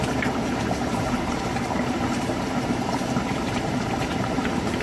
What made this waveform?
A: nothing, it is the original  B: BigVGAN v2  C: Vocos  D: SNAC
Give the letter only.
B